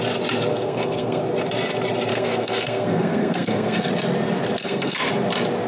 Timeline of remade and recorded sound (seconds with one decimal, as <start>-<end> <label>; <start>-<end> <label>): 0.0-0.5 recorded; 0.5-1.2 remade; 1.2-2.1 recorded; 2.1-3.9 remade; 3.9-4.6 recorded; 4.6-5.1 remade; 5.1-5.7 recorded